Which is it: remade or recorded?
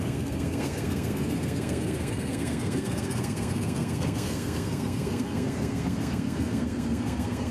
remade